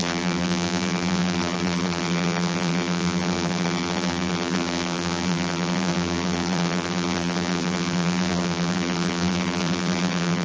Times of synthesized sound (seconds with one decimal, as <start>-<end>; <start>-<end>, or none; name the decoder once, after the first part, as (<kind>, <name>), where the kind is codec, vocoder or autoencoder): 0.0-10.4 (vocoder, BigVGAN v2)